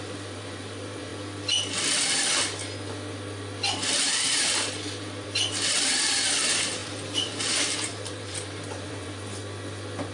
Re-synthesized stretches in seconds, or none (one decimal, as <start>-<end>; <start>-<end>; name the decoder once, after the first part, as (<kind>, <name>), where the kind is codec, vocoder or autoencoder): 0.0-1.1 (vocoder, BigVGAN v2); 4.1-9.4